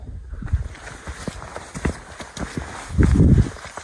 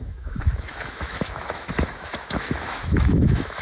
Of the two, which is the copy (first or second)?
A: second